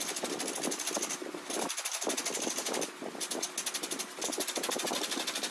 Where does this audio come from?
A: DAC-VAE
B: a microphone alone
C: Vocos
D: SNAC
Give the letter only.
B